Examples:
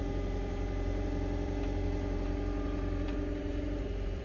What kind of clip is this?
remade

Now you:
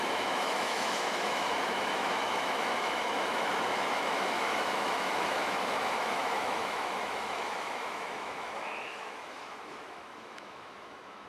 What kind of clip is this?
remade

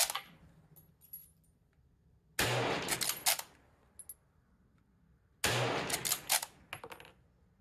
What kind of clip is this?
recorded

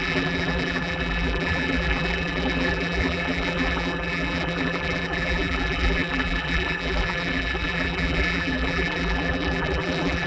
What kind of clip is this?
remade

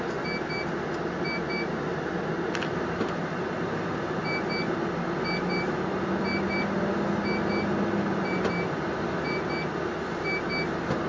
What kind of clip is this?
recorded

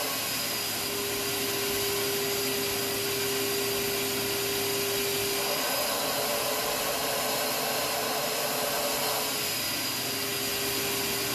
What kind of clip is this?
recorded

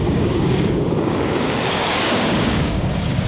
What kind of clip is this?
remade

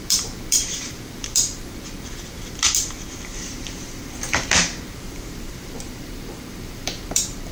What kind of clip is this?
remade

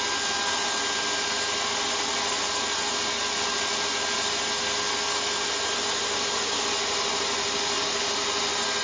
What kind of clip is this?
recorded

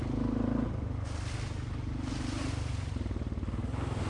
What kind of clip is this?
recorded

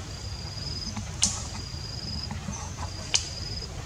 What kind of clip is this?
remade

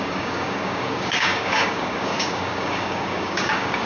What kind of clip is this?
remade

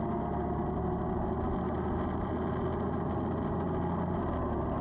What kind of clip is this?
recorded